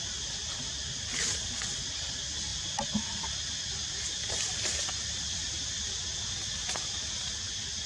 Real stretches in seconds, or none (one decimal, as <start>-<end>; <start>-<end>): 0.0-7.9